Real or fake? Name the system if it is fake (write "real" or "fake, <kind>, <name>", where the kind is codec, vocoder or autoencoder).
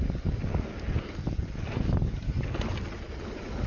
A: real